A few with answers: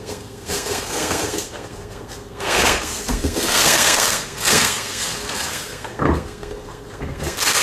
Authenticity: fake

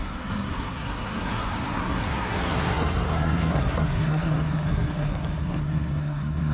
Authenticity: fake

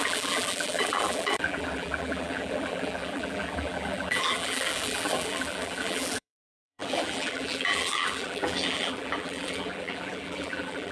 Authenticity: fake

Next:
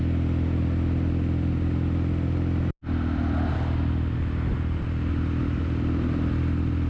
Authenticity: real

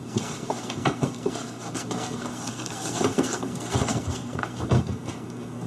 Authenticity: fake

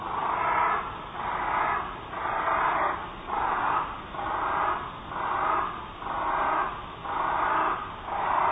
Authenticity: real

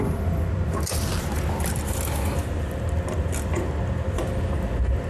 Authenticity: real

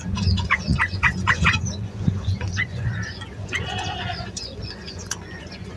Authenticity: fake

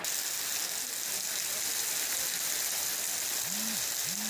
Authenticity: real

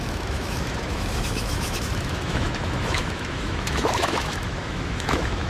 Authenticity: fake